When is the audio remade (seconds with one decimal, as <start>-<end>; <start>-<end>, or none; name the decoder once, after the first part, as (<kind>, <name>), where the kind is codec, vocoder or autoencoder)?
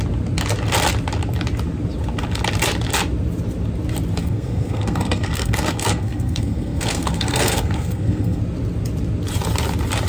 4.2-8.4 (codec, SNAC)